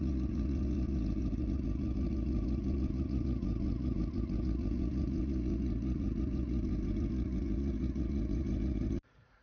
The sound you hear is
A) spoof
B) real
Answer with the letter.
A